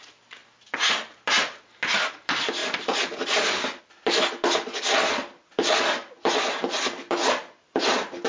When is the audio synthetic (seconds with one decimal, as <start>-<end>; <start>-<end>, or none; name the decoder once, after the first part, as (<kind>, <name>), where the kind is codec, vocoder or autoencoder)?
2.6-3.8 (vocoder, BigVGAN v2); 7.2-7.8